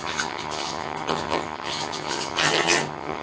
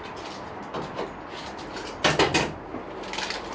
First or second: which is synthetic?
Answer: first